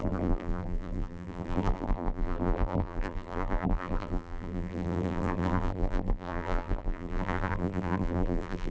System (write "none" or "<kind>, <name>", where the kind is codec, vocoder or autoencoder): vocoder, BigVGAN v2